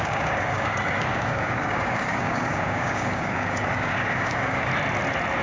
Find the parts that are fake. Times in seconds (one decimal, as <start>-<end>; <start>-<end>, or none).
0.0-4.7